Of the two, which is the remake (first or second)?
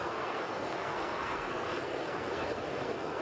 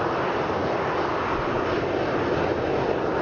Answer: first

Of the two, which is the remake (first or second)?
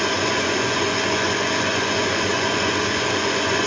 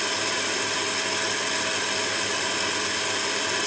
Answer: first